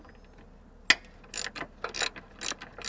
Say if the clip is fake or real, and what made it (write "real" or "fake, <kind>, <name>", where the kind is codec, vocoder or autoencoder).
real